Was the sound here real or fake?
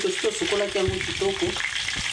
real